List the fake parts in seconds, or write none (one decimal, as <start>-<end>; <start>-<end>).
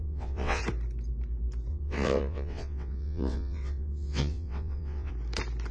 0.0-0.6; 1.7-5.1